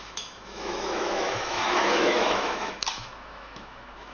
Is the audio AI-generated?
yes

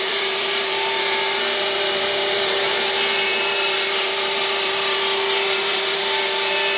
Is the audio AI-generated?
yes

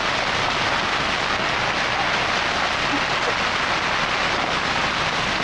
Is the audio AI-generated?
no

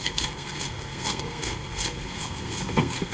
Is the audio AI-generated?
yes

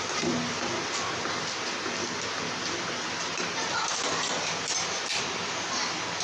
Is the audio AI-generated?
no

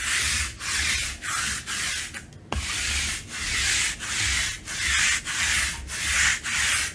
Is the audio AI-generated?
no